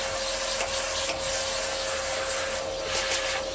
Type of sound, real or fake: real